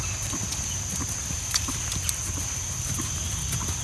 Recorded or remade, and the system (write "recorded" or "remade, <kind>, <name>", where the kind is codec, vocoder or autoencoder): recorded